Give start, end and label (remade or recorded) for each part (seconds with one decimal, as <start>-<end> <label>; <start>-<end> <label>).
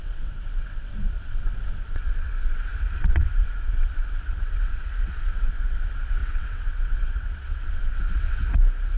0.0-8.4 remade; 8.4-9.0 recorded